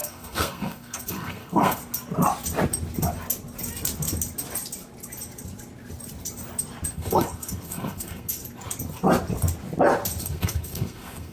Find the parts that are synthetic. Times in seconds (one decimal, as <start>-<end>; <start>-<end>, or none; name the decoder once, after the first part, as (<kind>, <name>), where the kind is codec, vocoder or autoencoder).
0.0-1.8 (codec, SNAC); 6.9-8.4; 10.2-11.3